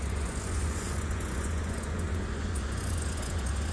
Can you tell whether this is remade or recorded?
remade